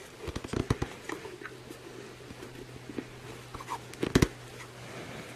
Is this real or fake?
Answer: real